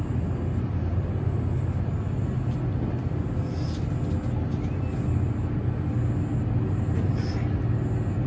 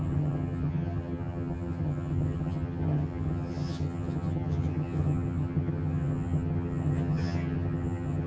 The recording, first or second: first